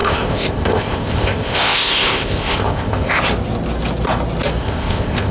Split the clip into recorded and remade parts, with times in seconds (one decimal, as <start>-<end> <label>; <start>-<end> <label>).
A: 0.0-3.2 remade; 3.2-4.6 recorded; 4.6-5.3 remade